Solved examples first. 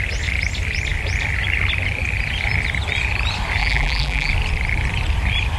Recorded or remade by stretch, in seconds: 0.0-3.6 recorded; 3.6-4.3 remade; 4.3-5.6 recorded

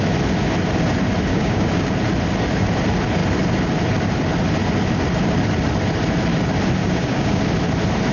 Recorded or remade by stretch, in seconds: 0.0-1.3 recorded; 1.3-1.9 remade; 1.9-6.8 recorded; 6.8-7.4 remade; 7.4-8.1 recorded

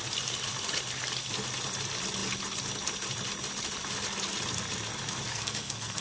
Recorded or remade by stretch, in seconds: 0.0-5.3 recorded; 5.3-6.0 remade

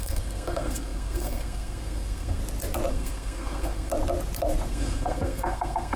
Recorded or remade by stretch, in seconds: 0.0-2.4 remade; 2.4-2.9 recorded; 2.9-3.9 remade; 3.9-4.7 recorded; 4.7-6.0 remade

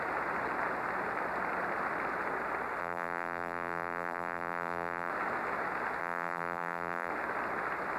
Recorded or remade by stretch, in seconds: 0.0-2.8 recorded; 2.8-5.1 remade; 5.1-6.0 recorded; 6.0-7.1 remade; 7.1-8.0 recorded

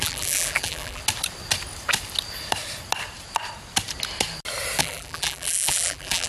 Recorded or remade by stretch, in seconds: 0.0-1.0 remade; 1.0-4.8 recorded; 4.8-6.3 remade